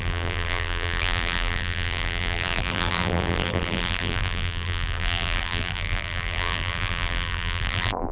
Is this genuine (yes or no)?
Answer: no